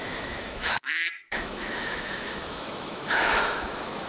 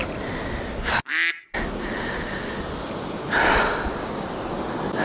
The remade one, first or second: first